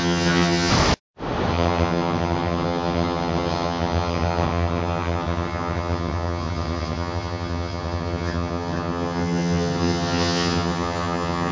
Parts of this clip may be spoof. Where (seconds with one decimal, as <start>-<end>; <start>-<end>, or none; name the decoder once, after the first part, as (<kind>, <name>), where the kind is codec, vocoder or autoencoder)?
0.0-0.7 (vocoder, HiFi-GAN); 1.5-11.5

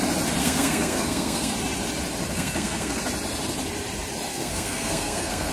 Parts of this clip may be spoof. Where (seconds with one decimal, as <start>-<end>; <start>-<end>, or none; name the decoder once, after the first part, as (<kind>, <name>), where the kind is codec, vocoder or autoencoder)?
0.4-1.5 (codec, SNAC); 2.3-3.0; 4.3-5.5

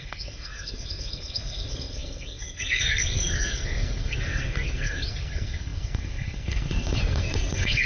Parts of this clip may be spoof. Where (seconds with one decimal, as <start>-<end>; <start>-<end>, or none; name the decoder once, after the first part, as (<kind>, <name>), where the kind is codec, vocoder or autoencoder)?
0.0-7.9 (codec, SNAC)

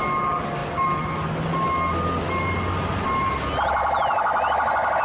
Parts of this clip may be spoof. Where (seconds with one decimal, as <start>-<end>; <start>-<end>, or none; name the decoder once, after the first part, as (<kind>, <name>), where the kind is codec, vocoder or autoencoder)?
none